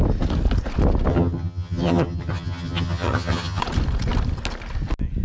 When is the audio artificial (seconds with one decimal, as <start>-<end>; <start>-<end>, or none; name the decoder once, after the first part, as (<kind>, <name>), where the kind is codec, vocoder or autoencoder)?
1.1-3.6 (vocoder, HiFi-GAN)